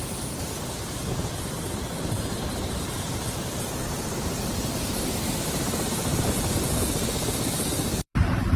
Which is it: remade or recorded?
remade